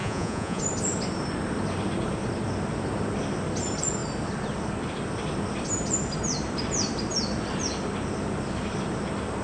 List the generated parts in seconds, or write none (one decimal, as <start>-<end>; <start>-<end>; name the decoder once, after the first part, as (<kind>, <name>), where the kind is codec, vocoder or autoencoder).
0.0-0.6 (vocoder, Vocos)